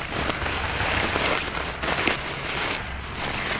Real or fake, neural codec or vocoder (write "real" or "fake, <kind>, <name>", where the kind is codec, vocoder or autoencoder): real